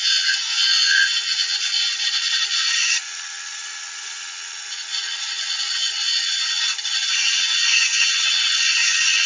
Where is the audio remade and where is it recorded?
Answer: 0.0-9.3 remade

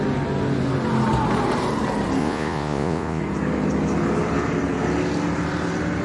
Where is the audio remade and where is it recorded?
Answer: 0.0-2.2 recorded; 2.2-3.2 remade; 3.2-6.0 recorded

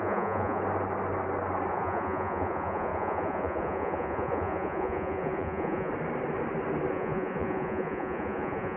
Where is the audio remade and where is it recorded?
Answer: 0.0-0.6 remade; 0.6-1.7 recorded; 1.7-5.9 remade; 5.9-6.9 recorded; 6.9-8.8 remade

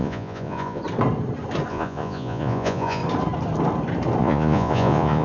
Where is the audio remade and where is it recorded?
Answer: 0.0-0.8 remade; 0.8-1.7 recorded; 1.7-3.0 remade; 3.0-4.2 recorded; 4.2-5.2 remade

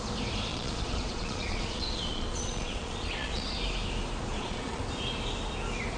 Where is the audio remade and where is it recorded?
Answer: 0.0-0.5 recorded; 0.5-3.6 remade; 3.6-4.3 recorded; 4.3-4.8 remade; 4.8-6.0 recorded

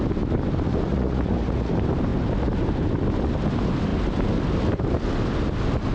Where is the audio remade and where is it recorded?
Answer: 0.0-0.9 recorded; 0.9-1.7 remade; 1.7-5.9 recorded

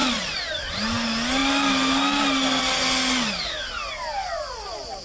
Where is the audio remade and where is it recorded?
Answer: 0.0-0.7 remade; 0.7-5.0 recorded

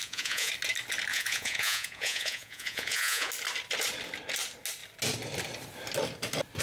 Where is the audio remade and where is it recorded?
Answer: 0.0-0.5 remade; 0.5-1.1 recorded; 1.1-3.3 remade; 3.3-6.6 recorded